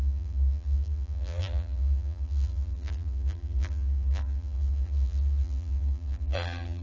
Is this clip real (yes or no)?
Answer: no